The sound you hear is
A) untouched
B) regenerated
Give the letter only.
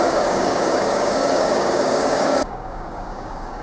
B